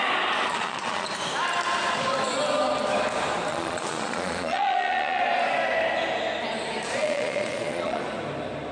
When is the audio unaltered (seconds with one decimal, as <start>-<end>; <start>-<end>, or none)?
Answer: 0.0-0.5; 1.1-3.5; 5.2-7.0; 8.0-8.7